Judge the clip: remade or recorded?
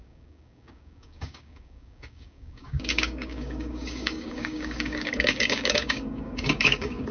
remade